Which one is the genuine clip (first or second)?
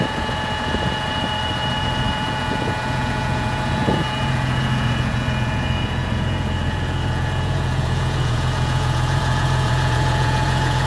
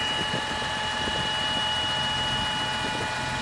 second